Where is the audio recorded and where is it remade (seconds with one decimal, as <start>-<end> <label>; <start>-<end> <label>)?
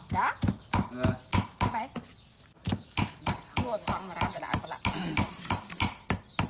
0.0-2.3 recorded; 2.3-3.2 remade; 3.2-6.5 recorded